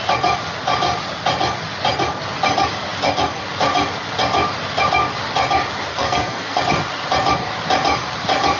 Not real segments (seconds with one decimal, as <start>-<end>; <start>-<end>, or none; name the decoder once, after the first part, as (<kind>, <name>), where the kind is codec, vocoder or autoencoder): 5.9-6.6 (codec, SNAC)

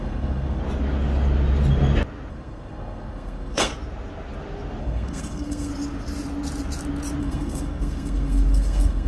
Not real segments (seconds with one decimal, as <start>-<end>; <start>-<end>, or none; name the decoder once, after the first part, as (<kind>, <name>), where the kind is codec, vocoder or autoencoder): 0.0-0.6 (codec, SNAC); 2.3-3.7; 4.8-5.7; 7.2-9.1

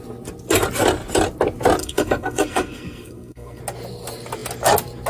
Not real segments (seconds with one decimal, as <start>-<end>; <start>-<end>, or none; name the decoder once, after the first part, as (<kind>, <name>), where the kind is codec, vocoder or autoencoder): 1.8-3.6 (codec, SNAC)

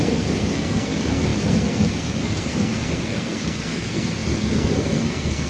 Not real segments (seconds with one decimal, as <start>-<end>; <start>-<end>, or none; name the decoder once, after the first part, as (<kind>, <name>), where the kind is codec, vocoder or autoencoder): 0.0-5.5 (codec, SNAC)

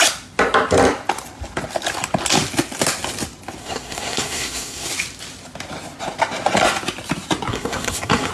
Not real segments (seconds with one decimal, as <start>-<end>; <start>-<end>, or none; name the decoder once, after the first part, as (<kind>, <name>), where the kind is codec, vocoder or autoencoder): 3.6-4.9 (codec, SNAC); 7.5-8.3

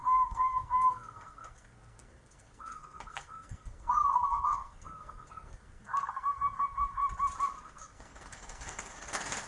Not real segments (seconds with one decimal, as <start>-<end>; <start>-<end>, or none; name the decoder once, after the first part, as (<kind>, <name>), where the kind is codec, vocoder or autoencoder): 0.0-7.0 (codec, SNAC); 7.6-9.5